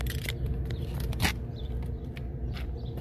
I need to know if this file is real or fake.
fake